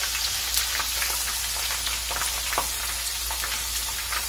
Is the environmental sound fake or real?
real